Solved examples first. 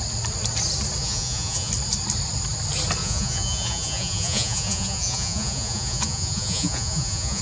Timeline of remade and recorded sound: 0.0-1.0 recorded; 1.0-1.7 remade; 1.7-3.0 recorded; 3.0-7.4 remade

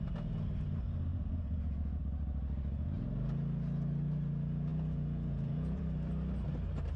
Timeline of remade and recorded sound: 0.0-1.1 recorded; 1.1-2.0 remade; 2.0-4.7 recorded; 4.7-5.8 remade; 5.8-7.0 recorded